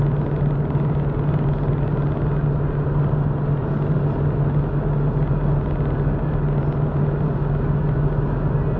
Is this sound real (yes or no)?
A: yes